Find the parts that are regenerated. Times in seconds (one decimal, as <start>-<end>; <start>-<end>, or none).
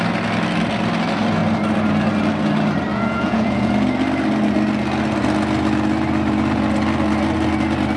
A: 2.9-3.7